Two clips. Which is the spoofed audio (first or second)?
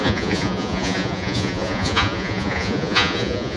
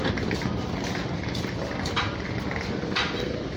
first